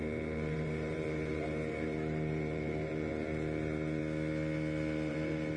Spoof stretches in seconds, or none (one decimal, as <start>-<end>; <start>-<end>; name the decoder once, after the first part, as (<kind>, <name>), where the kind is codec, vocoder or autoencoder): 0.0-4.0 (vocoder, BigVGAN v2); 5.1-5.6